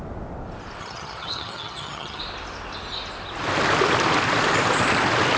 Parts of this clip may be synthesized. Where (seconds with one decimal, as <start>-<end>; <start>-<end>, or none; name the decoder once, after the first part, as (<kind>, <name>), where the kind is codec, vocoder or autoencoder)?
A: 0.8-2.2 (vocoder, HiFi-GAN)

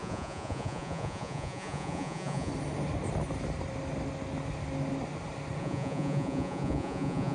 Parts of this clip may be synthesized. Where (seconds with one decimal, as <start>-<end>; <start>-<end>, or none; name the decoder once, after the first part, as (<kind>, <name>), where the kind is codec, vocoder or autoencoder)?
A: 0.0-2.5 (vocoder, Vocos); 5.6-7.3

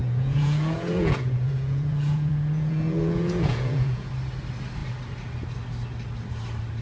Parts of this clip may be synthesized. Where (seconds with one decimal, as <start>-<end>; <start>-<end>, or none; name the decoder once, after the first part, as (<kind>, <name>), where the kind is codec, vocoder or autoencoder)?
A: 0.0-4.1 (vocoder, Vocos)

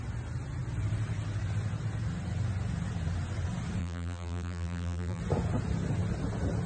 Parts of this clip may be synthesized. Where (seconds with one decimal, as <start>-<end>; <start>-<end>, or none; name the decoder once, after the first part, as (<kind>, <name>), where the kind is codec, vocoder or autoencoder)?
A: 3.8-5.2 (vocoder, BigVGAN v2)

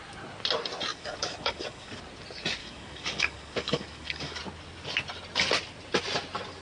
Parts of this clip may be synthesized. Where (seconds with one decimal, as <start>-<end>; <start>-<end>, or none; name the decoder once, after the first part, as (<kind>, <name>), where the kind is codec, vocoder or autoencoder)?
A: 0.9-2.0 (codec, DAC); 2.6-4.4

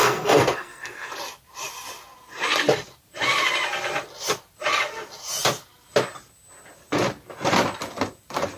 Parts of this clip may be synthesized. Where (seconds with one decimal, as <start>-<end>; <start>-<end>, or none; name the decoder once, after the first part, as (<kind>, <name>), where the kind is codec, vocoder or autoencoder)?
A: 0.0-1.1 (codec, SNAC)

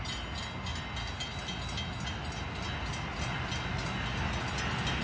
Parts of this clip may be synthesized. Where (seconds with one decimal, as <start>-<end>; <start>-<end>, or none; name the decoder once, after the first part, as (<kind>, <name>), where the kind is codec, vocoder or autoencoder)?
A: none